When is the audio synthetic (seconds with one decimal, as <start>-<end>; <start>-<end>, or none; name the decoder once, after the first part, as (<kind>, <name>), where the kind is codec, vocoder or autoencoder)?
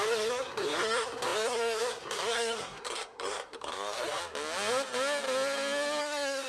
0.0-4.2 (codec, SNAC); 6.0-6.5